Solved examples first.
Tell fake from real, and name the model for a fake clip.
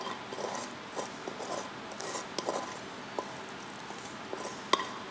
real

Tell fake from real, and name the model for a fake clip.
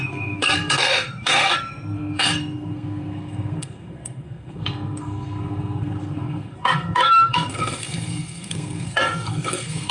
fake, codec, SNAC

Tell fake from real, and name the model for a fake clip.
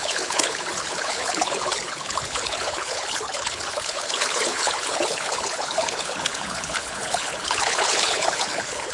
fake, codec, HILCodec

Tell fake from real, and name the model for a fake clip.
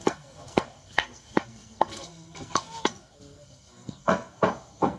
fake, codec, SNAC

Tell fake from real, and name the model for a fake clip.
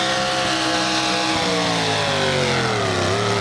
real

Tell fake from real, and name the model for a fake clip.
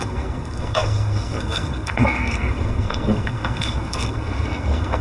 fake, codec, SNAC